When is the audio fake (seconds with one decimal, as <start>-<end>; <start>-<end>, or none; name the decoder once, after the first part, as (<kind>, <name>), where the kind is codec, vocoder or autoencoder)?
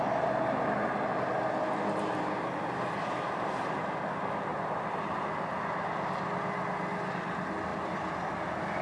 none